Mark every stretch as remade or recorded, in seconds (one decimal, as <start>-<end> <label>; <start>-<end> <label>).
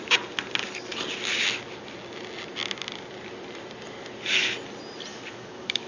0.0-5.1 recorded; 5.1-5.9 remade